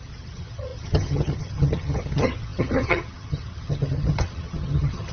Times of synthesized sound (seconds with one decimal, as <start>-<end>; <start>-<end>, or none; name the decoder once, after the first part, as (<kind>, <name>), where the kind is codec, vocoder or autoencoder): 0.0-5.1 (vocoder, HiFi-GAN)